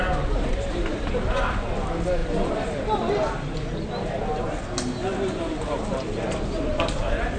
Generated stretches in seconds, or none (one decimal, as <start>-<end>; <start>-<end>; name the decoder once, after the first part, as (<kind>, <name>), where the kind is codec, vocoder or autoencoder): none